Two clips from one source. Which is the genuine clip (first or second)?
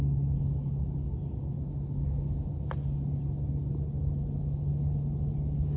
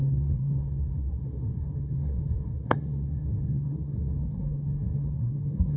first